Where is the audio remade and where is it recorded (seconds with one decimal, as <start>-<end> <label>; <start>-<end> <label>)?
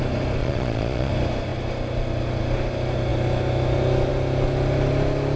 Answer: 0.0-0.4 recorded; 0.4-1.1 remade; 1.1-5.4 recorded